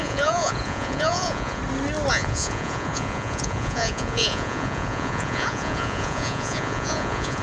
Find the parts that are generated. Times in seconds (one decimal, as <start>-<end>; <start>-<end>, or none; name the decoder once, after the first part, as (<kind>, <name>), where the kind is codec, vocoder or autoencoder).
0.0-1.6 (vocoder, Vocos); 2.1-7.4